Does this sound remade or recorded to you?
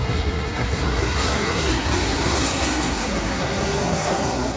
remade